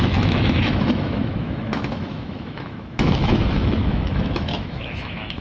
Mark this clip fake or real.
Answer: fake